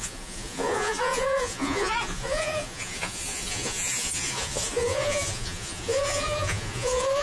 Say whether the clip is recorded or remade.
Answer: remade